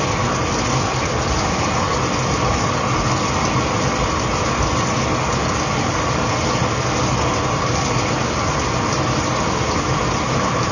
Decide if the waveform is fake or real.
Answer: real